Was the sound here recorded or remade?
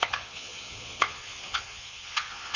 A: remade